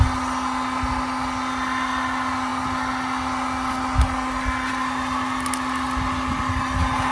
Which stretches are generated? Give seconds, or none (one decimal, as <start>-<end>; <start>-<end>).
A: none